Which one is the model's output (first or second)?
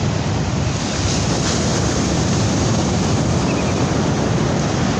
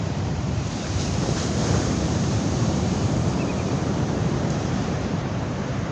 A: second